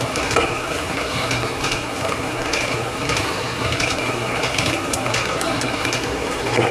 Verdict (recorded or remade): remade